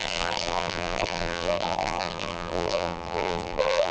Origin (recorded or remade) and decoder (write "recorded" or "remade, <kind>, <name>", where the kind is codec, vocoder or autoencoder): remade, vocoder, BigVGAN v2